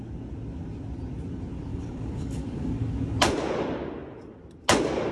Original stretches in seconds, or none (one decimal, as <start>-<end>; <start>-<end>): 0.0-1.7; 3.2-5.1

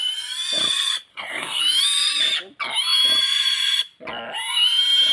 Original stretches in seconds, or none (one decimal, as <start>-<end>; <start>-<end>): 0.0-1.1; 1.6-5.1

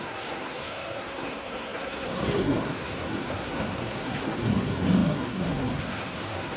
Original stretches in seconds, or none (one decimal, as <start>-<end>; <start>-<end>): none